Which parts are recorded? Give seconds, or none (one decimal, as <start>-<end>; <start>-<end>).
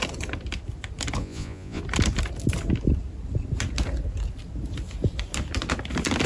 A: 0.0-1.2; 1.8-6.3